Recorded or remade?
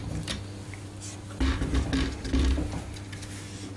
recorded